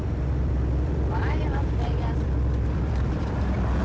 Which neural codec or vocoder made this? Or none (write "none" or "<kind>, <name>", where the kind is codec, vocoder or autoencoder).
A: vocoder, BigVGAN v2